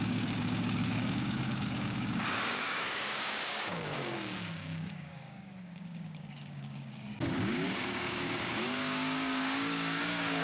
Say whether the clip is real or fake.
fake